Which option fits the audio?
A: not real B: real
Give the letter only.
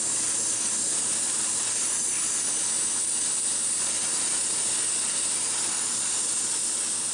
B